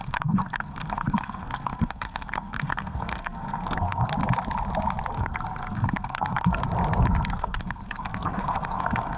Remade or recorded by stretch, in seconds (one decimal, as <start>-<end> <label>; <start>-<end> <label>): 0.0-4.1 remade; 4.1-5.1 recorded; 5.1-6.6 remade; 6.6-7.3 recorded; 7.3-9.2 remade